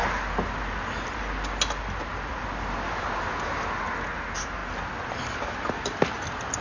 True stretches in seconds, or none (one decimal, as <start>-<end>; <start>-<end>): 0.0-6.6